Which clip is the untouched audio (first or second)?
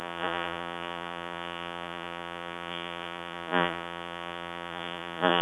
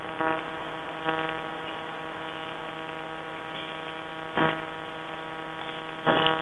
second